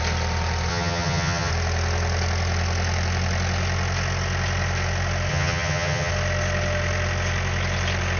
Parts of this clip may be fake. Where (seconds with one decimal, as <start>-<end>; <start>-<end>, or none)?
0.7-1.5; 5.3-6.1